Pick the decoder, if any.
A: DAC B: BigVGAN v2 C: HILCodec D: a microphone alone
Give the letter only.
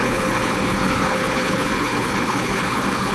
C